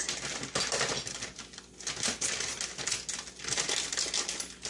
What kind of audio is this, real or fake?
real